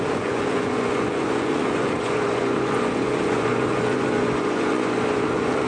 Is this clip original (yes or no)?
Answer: no